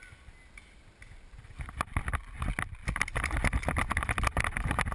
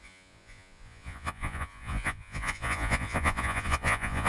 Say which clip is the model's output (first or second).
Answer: second